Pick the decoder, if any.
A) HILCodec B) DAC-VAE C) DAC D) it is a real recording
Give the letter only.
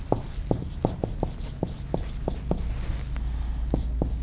D